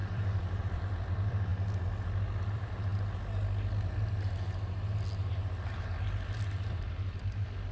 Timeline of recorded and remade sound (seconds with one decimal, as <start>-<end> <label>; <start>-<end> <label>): 0.0-1.5 remade; 1.5-2.2 recorded; 2.2-2.9 remade; 2.9-5.3 recorded; 5.3-7.7 remade